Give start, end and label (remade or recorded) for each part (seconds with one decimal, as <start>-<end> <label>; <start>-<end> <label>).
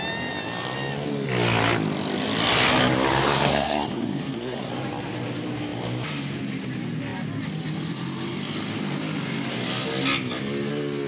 0.0-3.2 recorded; 3.2-4.7 remade; 4.7-11.1 recorded